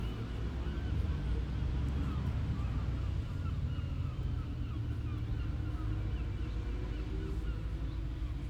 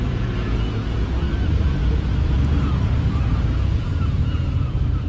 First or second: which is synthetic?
second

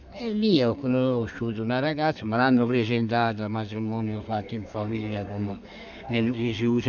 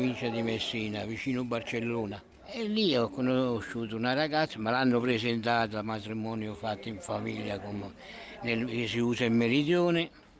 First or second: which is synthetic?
first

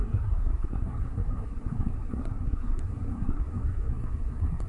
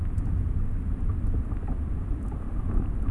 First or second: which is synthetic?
first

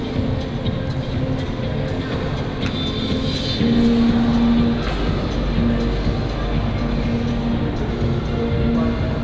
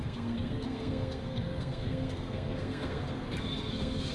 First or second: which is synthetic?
second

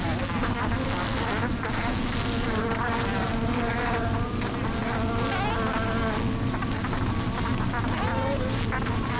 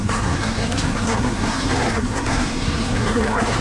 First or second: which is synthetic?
second